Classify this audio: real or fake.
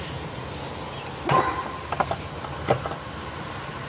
real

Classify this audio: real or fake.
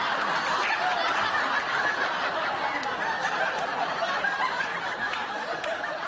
real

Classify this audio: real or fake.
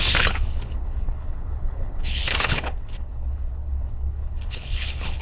fake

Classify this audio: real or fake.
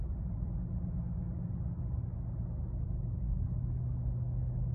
real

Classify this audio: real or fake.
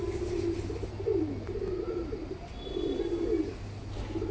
real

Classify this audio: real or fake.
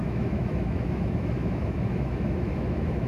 fake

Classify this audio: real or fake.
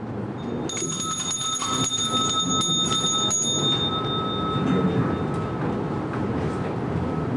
real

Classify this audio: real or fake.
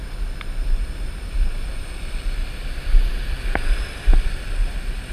real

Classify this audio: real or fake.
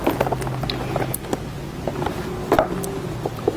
real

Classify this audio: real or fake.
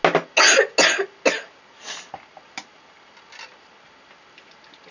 real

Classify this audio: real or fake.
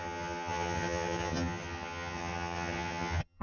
fake